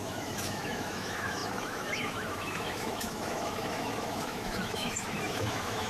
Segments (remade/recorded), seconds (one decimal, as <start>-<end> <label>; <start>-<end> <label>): 0.0-5.9 remade